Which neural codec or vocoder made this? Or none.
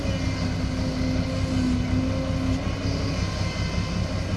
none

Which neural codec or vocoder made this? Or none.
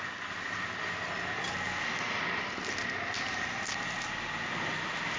none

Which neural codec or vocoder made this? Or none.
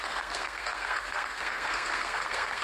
codec, SNAC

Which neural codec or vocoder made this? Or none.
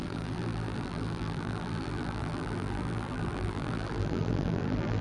vocoder, BigVGAN v2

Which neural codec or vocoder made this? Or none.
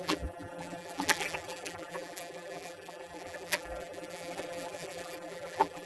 vocoder, BigVGAN v2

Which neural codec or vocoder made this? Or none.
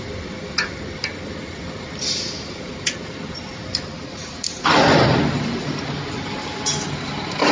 none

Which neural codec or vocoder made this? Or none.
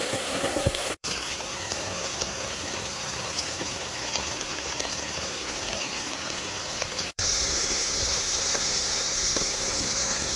codec, SNAC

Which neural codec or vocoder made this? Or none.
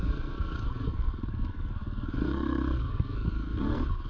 codec, SNAC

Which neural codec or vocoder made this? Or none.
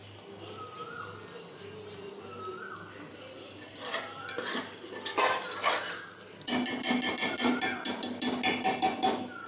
none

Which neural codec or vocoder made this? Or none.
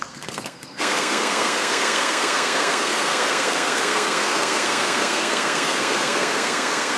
codec, SNAC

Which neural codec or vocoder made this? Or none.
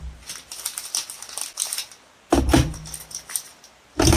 none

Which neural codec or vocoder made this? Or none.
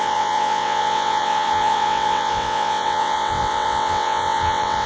vocoder, WaveNeXt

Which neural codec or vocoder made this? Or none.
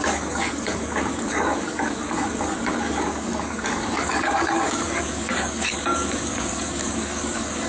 codec, DAC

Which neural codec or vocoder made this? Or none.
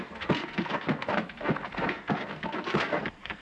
codec, SNAC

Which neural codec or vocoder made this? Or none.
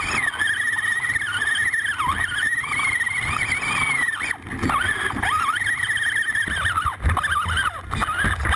none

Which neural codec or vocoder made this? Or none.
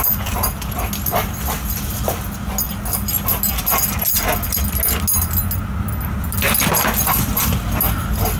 none